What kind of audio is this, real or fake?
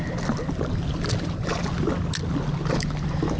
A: real